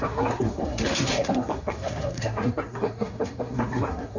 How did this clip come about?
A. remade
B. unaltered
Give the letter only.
A